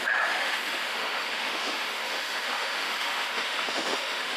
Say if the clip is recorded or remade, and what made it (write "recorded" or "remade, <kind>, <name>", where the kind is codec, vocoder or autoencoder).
remade, autoencoder, DAC-VAE